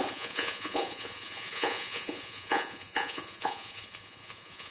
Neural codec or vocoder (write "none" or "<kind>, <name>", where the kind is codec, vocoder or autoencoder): vocoder, Vocos